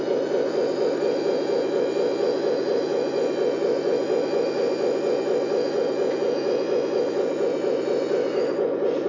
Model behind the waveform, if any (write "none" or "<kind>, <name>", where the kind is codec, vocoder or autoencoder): vocoder, Vocos